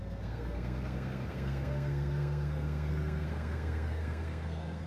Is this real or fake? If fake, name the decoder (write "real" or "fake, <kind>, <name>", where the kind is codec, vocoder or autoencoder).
fake, codec, SNAC